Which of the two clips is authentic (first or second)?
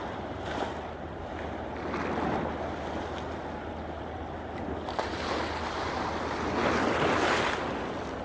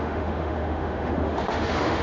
first